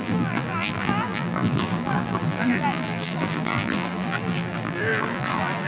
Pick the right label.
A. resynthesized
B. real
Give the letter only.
A